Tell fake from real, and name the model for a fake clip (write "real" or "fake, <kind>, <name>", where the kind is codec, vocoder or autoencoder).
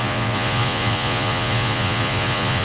fake, vocoder, Vocos